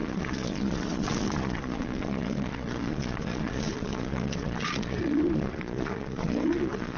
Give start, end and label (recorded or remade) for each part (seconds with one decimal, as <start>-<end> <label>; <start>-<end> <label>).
0.0-7.0 remade